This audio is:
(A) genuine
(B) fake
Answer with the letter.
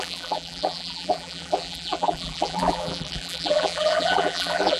B